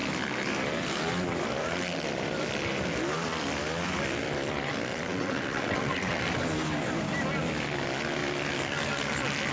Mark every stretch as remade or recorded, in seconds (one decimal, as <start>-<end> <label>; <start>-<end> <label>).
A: 0.0-4.9 recorded; 4.9-6.2 remade; 6.2-9.5 recorded